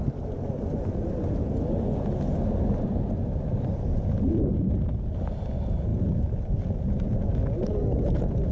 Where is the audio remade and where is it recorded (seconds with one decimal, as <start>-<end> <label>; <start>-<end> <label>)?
0.0-8.5 recorded